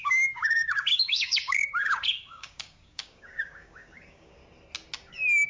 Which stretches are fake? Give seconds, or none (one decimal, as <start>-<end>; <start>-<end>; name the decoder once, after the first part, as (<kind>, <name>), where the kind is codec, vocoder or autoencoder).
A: 0.0-4.4 (codec, DAC); 5.1-5.5